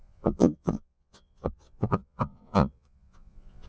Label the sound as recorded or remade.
remade